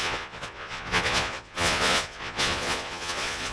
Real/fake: fake